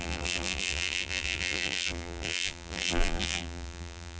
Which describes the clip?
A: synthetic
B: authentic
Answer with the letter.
A